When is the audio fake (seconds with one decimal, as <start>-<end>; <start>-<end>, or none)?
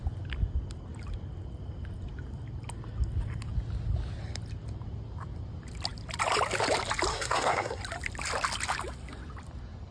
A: 7.1-7.8